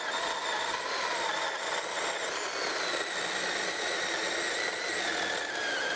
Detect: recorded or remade recorded